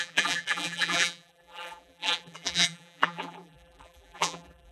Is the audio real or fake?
fake